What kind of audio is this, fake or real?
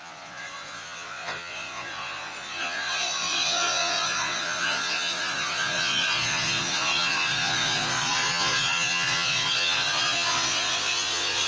fake